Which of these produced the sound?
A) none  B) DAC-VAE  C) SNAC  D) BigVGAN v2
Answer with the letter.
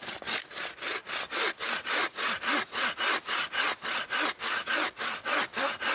A